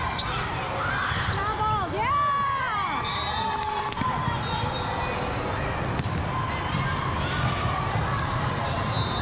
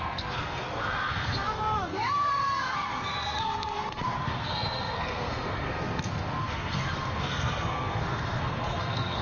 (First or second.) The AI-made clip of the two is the second